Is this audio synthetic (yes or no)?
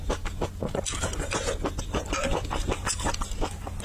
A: no